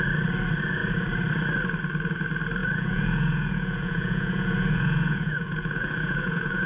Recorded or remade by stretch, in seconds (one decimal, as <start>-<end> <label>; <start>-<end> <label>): 0.0-2.6 recorded; 2.6-6.7 remade